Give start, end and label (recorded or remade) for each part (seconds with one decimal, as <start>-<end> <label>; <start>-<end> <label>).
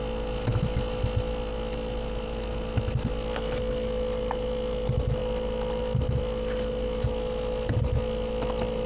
0.0-8.9 recorded